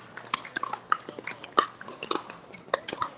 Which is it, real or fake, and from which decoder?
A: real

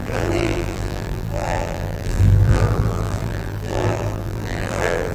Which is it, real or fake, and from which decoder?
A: fake, vocoder, BigVGAN v2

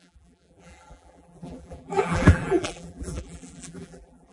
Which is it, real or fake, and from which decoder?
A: fake, vocoder, BigVGAN v2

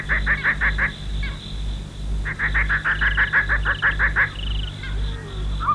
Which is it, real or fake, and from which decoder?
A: real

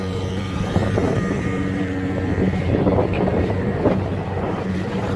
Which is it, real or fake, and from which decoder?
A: fake, vocoder, BigVGAN v2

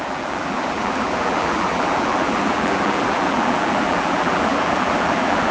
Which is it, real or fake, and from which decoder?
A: fake, vocoder, BigVGAN v2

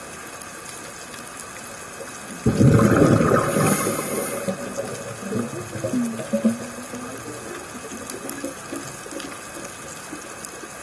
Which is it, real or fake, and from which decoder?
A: real